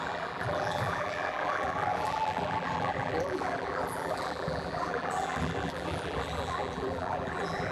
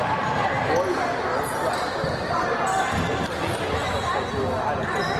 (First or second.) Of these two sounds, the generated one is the first